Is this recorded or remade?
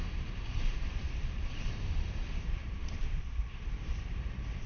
remade